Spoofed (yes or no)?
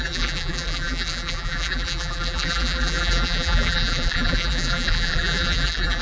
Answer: yes